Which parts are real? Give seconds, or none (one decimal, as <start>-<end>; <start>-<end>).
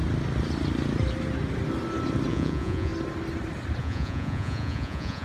0.0-2.3; 2.9-3.8